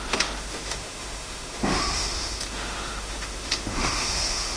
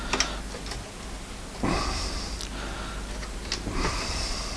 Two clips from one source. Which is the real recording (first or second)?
second